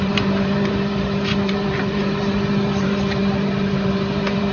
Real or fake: fake